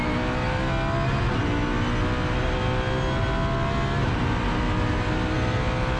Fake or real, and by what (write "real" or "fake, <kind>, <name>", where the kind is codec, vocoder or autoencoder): real